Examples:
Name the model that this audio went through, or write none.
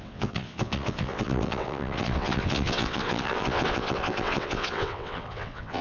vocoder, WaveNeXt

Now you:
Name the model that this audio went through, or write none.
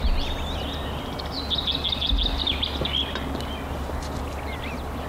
none